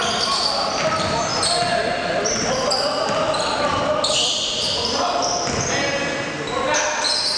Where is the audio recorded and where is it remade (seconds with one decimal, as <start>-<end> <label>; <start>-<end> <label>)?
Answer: 0.0-7.4 recorded

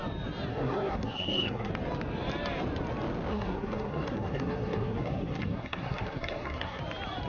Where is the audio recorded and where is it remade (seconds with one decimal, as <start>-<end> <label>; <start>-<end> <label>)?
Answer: 0.0-0.5 recorded; 0.5-1.7 remade; 1.7-3.3 recorded; 3.3-6.8 remade; 6.8-7.3 recorded

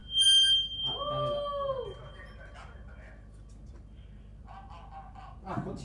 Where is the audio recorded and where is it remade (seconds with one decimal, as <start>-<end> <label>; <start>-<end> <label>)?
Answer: 0.0-5.8 recorded

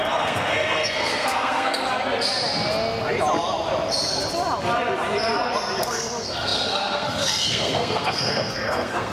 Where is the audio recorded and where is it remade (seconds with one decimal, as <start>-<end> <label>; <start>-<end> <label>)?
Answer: 0.0-1.8 remade; 1.8-5.8 recorded; 5.8-9.1 remade

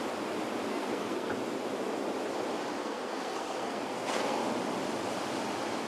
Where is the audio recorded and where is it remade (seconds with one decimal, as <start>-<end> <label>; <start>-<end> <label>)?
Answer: 0.0-0.7 recorded; 0.7-1.3 remade; 1.3-2.8 recorded; 2.8-4.4 remade; 4.4-5.9 recorded